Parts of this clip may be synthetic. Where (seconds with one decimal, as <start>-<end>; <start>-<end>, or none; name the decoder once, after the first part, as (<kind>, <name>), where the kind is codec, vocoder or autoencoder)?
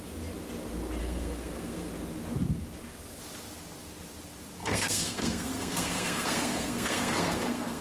1.0-1.9 (codec, SNAC); 4.6-7.8